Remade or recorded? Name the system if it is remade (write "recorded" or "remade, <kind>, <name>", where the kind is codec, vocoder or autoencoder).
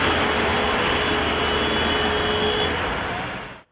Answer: recorded